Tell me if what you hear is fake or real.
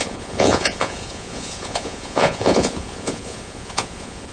fake